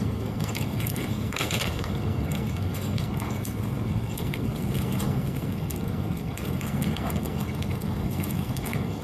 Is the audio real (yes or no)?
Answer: no